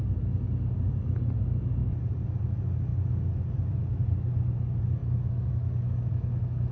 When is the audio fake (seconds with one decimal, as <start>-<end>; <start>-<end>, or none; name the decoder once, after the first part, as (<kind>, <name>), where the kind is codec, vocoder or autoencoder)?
5.0-6.7 (autoencoder, DAC-VAE)